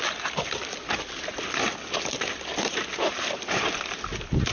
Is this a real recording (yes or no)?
yes